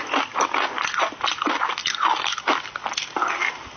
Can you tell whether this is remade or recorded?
recorded